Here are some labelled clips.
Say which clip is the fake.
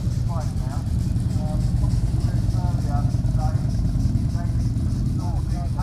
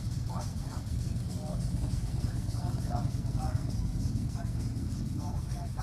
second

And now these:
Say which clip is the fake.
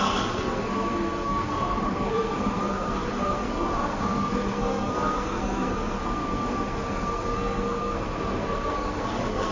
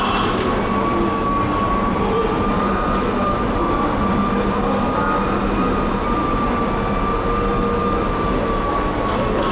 first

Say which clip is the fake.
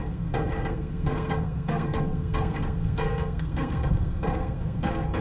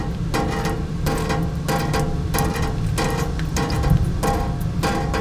first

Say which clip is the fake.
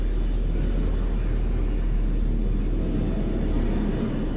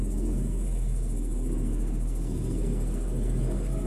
second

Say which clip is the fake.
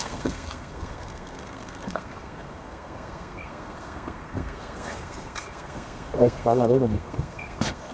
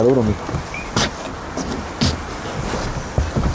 first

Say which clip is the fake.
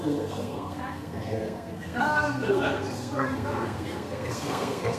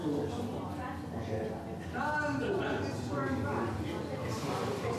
first